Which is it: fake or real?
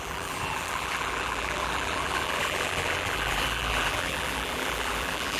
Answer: fake